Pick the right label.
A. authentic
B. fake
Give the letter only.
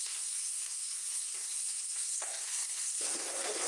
B